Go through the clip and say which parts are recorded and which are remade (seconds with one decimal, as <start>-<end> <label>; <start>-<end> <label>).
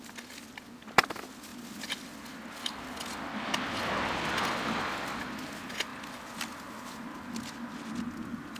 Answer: 0.0-5.9 recorded; 5.9-7.3 remade; 7.3-8.6 recorded